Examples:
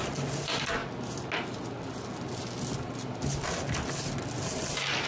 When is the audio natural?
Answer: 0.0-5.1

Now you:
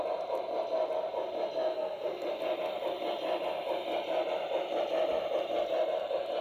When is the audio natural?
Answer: 0.0-1.7; 2.4-6.4

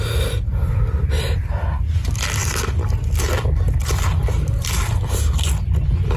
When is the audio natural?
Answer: 0.0-6.2

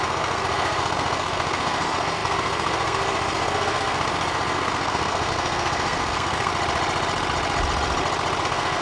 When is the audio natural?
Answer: 6.5-8.4

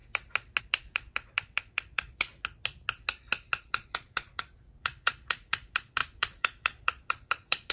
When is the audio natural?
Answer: 0.0-0.6; 2.3-3.6

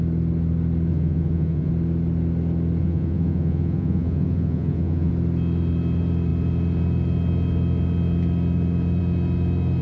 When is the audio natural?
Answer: 0.0-0.9; 1.7-2.8; 5.1-9.8